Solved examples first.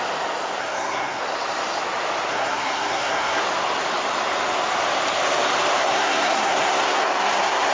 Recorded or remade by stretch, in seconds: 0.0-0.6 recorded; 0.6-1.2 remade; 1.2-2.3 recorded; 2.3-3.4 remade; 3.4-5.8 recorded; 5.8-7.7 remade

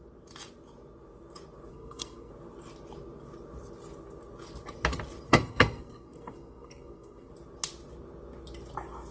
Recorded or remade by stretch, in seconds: 0.0-1.7 recorded; 1.7-2.3 remade; 2.3-5.3 recorded; 5.3-7.3 remade; 7.3-9.1 recorded

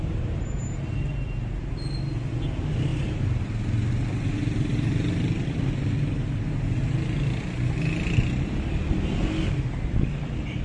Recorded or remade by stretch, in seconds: 0.0-10.6 recorded